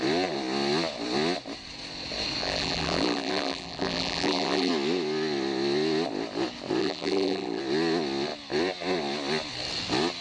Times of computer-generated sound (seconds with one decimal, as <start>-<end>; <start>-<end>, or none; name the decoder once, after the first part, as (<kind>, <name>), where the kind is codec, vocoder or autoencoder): 2.4-4.7 (vocoder, BigVGAN v2); 6.8-7.6